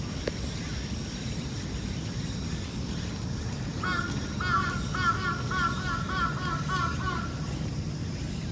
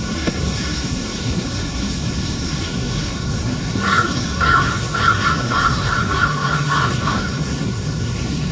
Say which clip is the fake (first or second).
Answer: second